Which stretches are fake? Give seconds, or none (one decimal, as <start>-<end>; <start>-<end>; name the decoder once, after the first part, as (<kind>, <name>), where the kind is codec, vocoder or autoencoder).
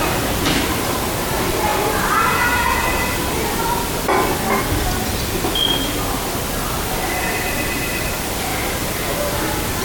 0.0-1.7 (vocoder, BigVGAN v2); 6.7-8.5